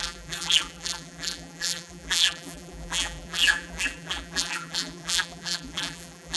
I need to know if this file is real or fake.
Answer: fake